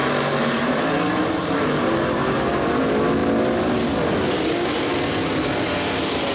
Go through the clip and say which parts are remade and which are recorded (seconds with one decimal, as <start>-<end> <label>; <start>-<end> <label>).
0.0-2.8 remade; 2.8-6.3 recorded